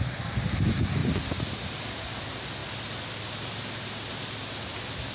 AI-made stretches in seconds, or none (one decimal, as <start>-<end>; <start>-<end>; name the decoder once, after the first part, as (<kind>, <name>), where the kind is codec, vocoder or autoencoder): none